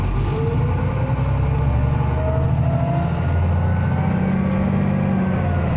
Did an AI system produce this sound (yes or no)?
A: no